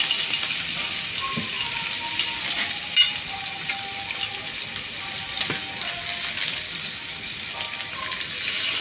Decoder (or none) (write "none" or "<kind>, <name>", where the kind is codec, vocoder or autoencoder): none